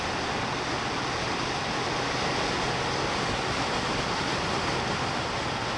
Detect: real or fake real